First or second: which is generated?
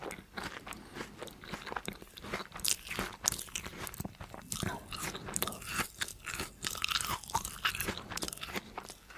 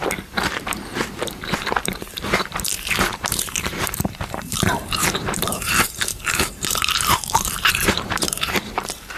second